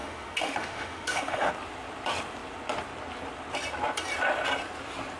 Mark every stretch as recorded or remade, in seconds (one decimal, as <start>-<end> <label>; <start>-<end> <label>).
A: 0.0-1.5 remade; 1.5-5.2 recorded